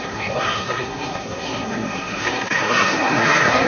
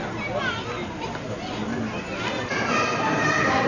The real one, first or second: second